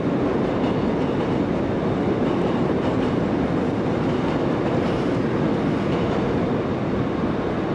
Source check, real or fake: real